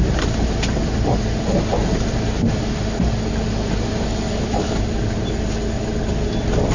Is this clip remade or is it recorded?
remade